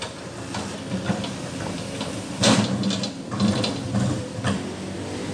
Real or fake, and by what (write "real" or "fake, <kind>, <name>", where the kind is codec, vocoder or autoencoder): real